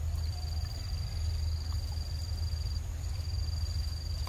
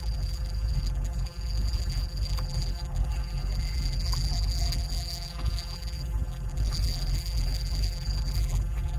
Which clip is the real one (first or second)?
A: first